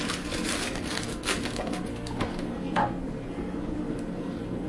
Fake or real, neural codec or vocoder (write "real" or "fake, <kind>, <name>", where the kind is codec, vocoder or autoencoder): fake, codec, SNAC